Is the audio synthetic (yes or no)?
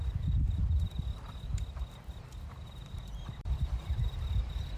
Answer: no